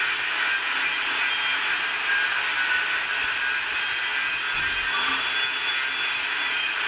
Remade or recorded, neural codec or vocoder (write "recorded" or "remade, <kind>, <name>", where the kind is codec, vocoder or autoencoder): recorded